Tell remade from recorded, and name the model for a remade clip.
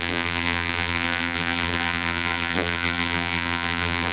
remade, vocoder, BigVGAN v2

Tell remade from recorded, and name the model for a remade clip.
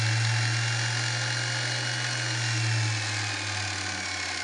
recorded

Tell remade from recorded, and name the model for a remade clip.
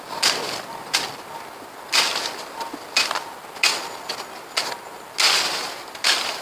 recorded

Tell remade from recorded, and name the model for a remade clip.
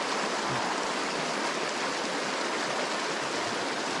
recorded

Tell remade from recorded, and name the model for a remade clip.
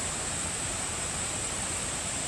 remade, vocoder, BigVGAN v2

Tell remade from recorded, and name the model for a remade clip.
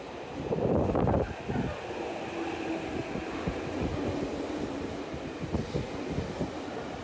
recorded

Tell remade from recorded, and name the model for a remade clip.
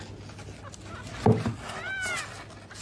recorded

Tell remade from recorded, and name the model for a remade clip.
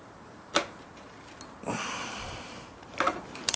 remade, vocoder, BigVGAN v2